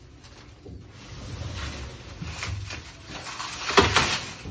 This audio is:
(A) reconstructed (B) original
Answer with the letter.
B